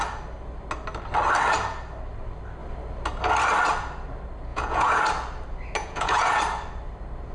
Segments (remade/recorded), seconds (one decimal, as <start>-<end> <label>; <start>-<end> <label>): 0.0-4.5 recorded; 4.5-5.0 remade; 5.0-5.8 recorded; 5.8-6.4 remade; 6.4-7.3 recorded